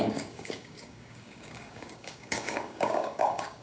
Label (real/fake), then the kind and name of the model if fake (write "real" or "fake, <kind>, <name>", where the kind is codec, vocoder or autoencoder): fake, codec, DAC